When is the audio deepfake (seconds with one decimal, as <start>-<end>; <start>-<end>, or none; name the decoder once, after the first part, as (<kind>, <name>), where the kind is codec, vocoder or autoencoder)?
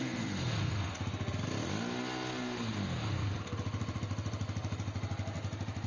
0.0-0.9 (codec, SNAC)